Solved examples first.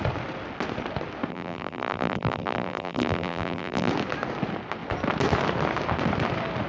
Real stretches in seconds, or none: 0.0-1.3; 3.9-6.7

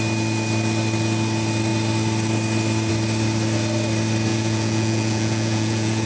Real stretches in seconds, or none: 0.0-4.3

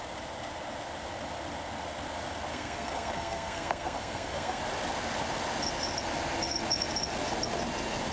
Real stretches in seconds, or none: 0.0-2.5; 4.6-8.1